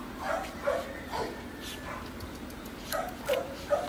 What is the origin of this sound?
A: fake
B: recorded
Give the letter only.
B